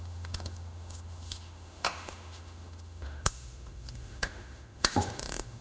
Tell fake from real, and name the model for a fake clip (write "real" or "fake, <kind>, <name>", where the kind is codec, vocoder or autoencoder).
fake, autoencoder, DAC-VAE